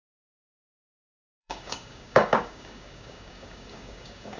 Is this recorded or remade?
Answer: remade